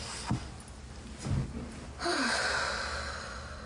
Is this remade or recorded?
recorded